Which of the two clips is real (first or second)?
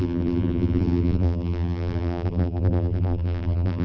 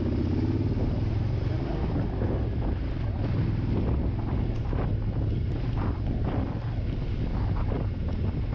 second